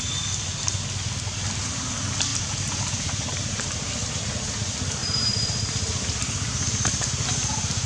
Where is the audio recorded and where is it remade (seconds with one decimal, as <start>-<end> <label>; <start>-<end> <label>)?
0.0-2.3 recorded; 2.3-3.7 remade; 3.7-5.0 recorded; 5.0-7.3 remade; 7.3-7.9 recorded

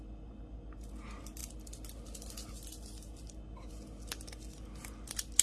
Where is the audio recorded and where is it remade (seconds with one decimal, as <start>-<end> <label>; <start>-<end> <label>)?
0.0-5.4 recorded

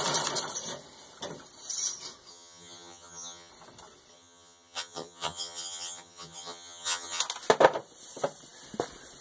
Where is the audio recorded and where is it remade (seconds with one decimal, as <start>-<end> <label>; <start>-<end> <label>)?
0.0-2.3 recorded; 2.3-3.5 remade; 3.5-4.1 recorded; 4.1-7.2 remade; 7.2-9.2 recorded